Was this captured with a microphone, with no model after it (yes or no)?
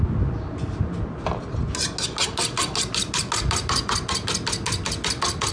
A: yes